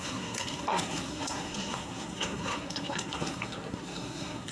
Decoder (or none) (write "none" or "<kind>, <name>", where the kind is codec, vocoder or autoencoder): codec, SNAC